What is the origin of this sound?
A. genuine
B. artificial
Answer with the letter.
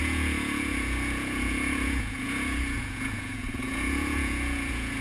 B